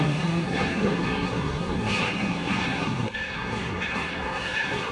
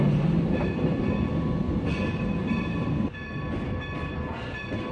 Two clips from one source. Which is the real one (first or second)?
second